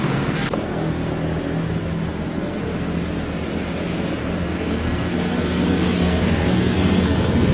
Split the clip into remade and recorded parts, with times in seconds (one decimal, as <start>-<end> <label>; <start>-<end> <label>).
0.0-1.1 remade; 1.1-2.3 recorded; 2.3-2.9 remade; 2.9-4.3 recorded; 4.3-7.5 remade